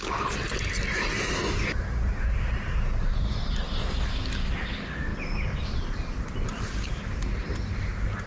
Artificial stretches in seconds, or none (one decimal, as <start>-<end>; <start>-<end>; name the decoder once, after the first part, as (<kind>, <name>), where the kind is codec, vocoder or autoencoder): none